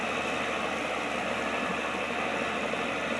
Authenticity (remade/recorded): recorded